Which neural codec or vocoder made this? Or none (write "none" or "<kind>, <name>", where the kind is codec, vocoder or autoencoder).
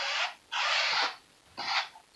none